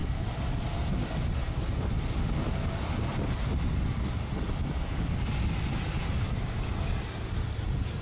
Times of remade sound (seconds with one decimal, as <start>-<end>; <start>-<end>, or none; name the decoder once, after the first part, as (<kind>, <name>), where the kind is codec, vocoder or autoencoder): none